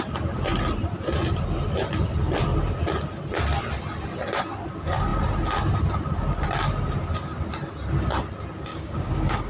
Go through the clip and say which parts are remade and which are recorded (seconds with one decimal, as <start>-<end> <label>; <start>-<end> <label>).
0.0-8.7 recorded; 8.7-9.5 remade